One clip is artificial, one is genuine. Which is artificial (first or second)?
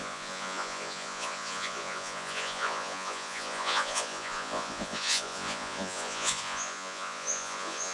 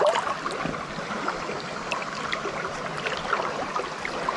first